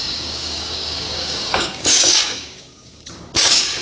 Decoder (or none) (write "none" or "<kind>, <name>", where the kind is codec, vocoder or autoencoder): codec, DAC